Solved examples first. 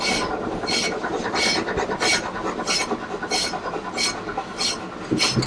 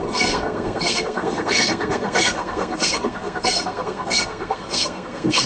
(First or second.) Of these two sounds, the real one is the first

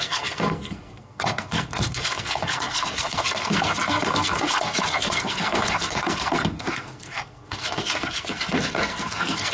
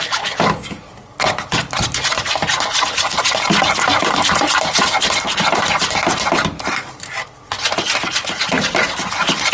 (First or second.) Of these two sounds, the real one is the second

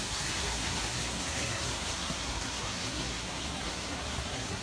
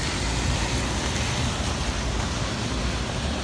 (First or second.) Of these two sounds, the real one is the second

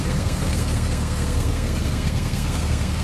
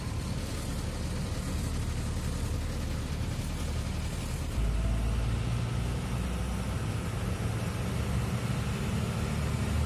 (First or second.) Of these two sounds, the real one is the second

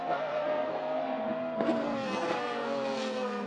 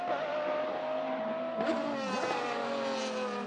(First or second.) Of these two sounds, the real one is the second